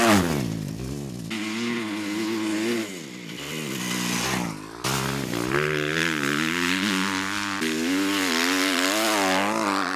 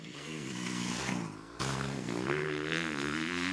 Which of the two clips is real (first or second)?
first